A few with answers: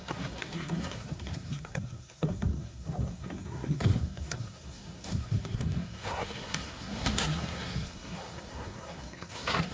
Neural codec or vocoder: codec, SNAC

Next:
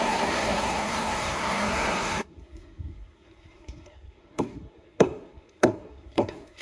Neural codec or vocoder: codec, SNAC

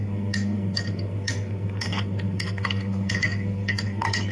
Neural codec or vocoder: codec, SNAC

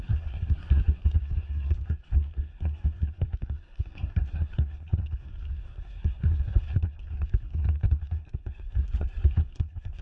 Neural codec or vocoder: codec, SNAC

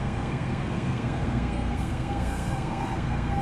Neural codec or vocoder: codec, SNAC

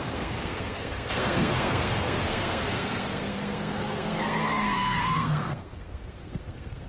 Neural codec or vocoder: codec, SNAC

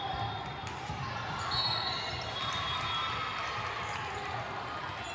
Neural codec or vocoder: none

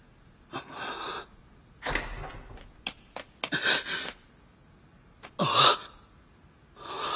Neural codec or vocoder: none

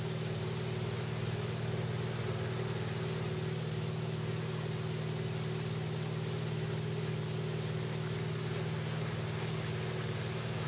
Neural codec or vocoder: none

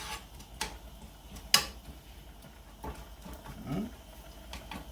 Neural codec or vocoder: none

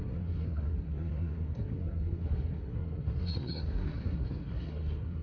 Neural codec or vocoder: codec, SNAC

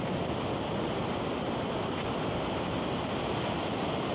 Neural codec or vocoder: none